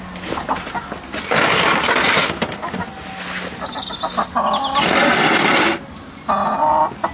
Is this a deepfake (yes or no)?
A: no